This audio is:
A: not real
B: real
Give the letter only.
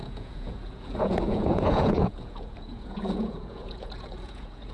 A